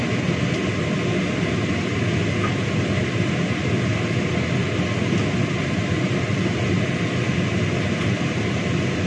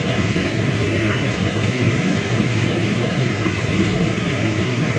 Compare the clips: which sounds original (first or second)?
first